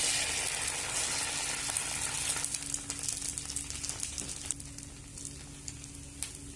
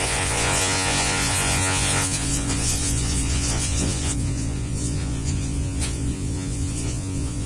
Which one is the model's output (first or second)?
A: second